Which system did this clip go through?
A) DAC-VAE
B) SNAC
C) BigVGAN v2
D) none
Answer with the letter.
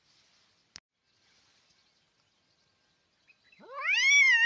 D